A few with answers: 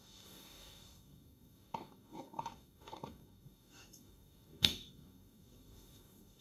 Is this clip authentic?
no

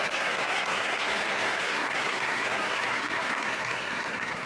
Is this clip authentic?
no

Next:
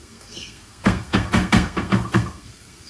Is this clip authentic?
no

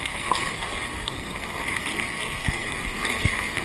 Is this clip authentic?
no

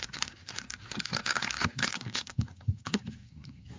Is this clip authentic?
no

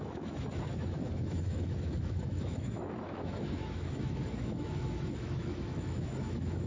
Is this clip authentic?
no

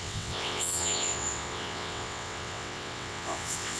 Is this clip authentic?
no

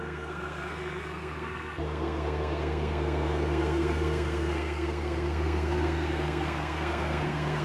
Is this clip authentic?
no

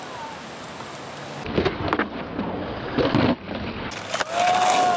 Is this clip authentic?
yes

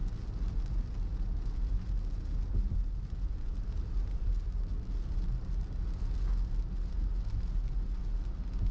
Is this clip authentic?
yes